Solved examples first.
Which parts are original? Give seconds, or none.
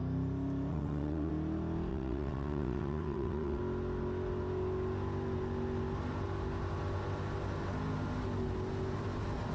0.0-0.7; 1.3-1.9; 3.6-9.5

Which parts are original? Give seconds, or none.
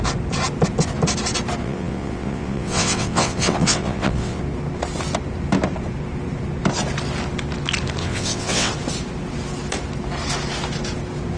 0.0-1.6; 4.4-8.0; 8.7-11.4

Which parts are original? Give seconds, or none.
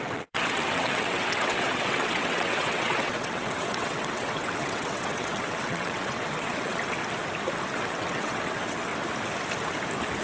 7.0-7.7; 8.9-10.2